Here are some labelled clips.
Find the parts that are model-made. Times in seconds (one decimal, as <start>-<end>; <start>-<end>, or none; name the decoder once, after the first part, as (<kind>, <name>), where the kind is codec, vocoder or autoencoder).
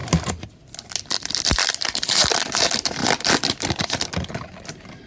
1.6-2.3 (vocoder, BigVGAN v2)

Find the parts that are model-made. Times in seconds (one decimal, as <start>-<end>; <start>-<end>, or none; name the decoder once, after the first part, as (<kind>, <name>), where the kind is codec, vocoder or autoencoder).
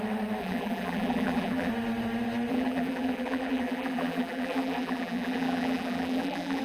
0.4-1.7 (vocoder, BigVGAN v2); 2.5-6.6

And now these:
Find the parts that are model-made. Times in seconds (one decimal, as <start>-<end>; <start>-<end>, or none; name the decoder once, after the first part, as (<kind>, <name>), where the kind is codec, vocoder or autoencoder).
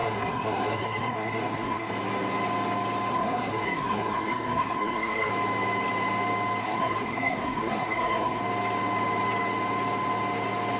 0.0-1.9 (codec, SNAC); 3.1-5.3; 6.6-8.4